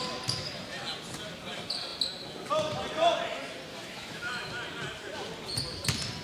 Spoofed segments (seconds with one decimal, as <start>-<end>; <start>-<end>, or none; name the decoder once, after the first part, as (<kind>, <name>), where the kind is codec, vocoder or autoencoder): 3.7-4.5 (autoencoder, DAC-VAE)